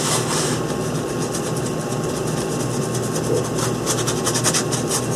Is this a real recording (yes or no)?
yes